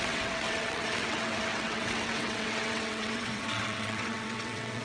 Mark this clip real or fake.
fake